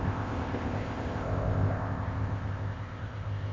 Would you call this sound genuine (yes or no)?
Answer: no